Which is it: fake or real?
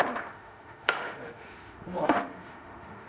fake